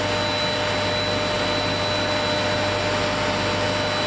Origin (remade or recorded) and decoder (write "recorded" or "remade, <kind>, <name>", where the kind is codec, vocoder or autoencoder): recorded